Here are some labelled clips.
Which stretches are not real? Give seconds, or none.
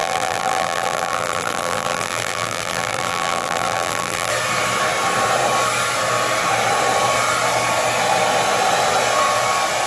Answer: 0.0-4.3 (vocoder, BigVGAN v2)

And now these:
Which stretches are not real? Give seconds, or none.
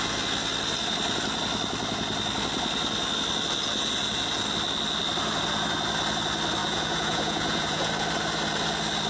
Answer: 6.6-7.9 (vocoder, Vocos)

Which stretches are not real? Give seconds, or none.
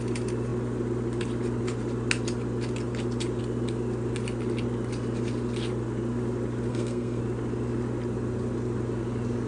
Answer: 6.7-7.2 (codec, SNAC)